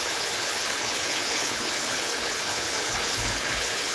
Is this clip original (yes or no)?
no